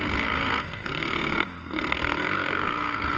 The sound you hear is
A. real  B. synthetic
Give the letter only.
B